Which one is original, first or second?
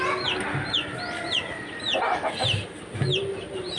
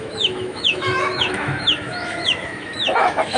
first